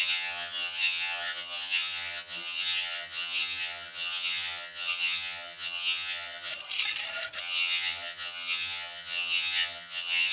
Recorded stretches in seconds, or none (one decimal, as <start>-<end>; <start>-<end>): 6.5-7.4